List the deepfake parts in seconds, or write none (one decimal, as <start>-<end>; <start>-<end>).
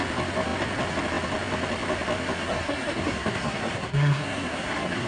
2.4-5.1